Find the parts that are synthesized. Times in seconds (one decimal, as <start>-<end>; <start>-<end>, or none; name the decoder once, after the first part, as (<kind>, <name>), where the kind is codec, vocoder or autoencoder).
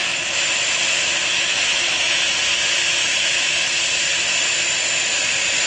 0.0-0.5 (autoencoder, DAC-VAE); 1.3-2.2; 3.0-3.8